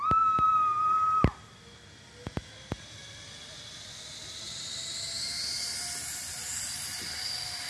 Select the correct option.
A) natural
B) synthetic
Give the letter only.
A